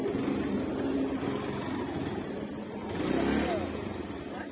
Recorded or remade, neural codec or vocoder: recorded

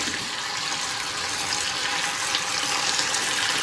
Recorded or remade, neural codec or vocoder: recorded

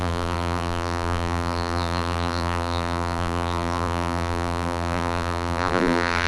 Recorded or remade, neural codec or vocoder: remade, vocoder, BigVGAN v2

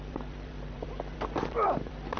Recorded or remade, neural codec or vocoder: remade, vocoder, BigVGAN v2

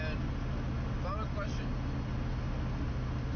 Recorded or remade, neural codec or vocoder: recorded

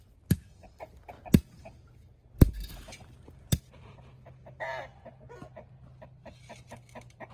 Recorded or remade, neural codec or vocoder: recorded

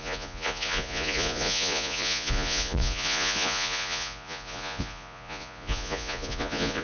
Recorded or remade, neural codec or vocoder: remade, vocoder, Vocos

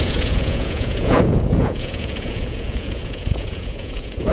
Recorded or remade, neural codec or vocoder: remade, vocoder, Vocos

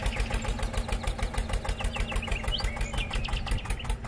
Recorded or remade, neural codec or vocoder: recorded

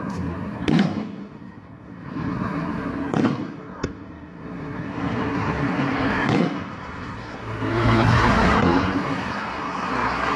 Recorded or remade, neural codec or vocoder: remade, codec, SNAC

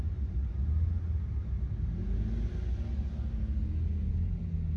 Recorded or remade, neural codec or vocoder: recorded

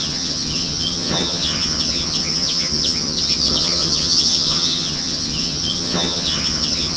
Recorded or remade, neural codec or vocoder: remade, vocoder, HiFi-GAN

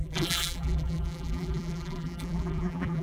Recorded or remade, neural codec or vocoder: remade, vocoder, BigVGAN v2